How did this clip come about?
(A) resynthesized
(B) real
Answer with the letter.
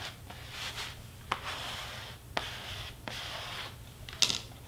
B